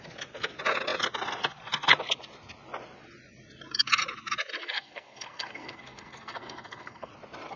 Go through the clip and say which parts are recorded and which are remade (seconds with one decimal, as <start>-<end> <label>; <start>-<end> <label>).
0.0-4.6 recorded; 4.6-7.1 remade; 7.1-7.6 recorded